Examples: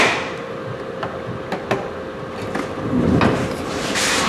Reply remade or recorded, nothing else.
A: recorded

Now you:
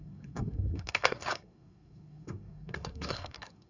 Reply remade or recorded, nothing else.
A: remade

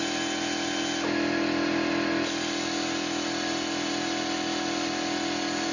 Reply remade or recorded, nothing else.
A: recorded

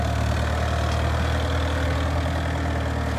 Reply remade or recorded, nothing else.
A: recorded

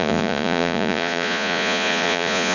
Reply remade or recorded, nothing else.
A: remade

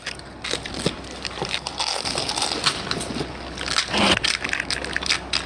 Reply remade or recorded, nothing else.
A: recorded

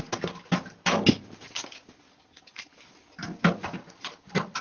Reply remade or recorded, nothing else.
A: recorded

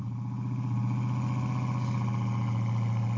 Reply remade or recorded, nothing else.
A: recorded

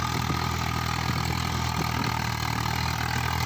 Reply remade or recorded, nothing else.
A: recorded